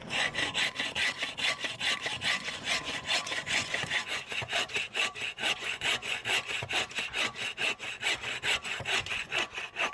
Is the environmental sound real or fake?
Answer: fake